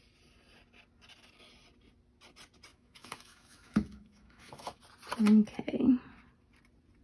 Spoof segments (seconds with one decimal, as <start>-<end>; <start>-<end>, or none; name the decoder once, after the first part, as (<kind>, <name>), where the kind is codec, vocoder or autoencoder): 2.7-4.8 (autoencoder, DAC-VAE)